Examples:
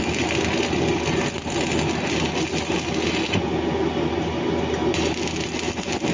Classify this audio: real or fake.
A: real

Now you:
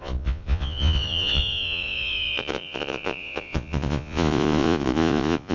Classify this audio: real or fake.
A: fake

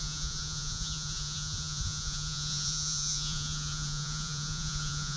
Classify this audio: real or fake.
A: fake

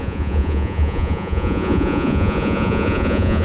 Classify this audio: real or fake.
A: fake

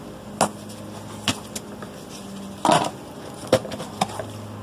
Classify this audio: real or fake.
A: real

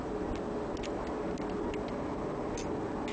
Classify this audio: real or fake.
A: real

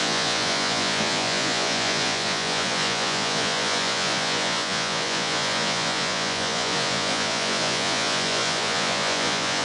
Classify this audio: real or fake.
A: fake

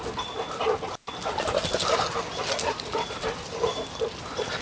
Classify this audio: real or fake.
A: real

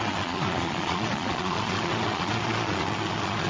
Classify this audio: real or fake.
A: fake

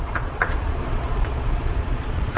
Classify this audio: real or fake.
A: fake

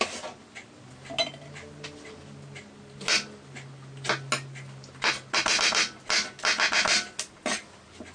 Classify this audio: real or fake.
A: real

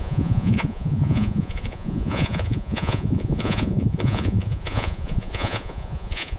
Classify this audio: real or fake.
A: fake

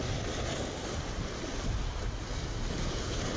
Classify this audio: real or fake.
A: real